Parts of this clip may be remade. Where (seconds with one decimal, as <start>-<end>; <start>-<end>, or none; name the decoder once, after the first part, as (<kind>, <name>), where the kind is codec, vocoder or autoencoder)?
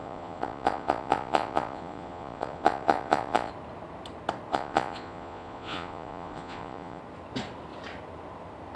0.0-3.5 (vocoder, Vocos); 4.5-7.0